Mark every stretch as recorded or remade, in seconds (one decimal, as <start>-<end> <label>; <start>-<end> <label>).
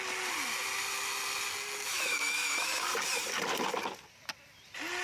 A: 0.0-1.9 recorded; 1.9-2.7 remade; 2.7-5.0 recorded